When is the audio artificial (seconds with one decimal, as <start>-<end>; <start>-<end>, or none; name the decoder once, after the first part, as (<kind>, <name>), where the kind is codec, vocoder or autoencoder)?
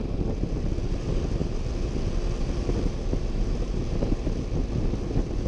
none